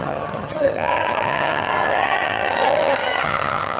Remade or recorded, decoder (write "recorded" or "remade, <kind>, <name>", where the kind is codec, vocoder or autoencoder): remade, vocoder, HiFi-GAN